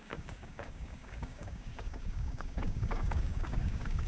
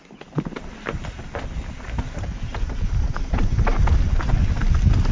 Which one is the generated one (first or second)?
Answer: first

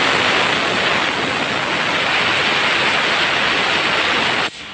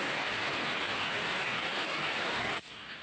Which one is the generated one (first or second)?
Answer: second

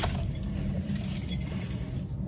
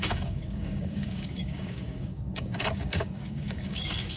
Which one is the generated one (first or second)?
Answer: second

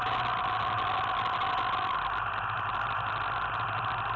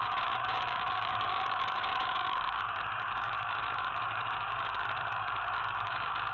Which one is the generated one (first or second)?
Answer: second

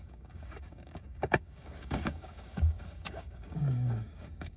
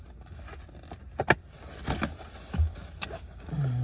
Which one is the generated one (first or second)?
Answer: first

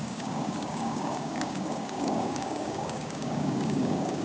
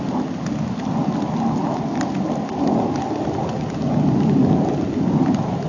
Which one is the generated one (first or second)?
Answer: first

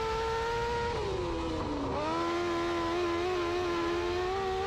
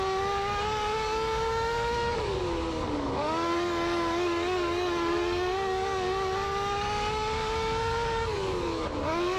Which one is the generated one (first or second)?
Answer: second